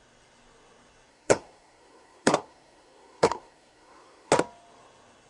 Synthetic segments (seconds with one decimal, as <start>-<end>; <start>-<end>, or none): 1.1-4.3

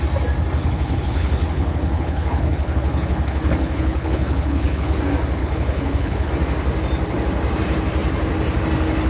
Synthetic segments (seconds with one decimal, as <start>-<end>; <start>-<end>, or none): 0.6-5.0; 5.4-6.3

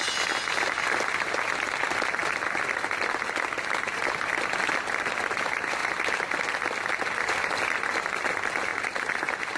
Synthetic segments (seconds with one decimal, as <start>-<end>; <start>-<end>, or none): none

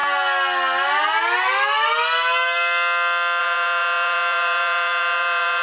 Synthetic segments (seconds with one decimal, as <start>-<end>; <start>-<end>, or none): 3.4-5.6

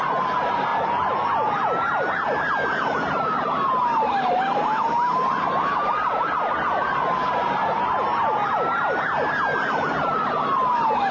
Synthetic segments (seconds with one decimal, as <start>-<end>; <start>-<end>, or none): none

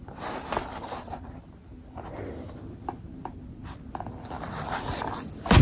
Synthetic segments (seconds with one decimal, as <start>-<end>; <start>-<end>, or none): none